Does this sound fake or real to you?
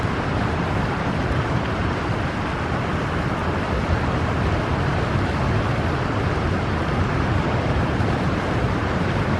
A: real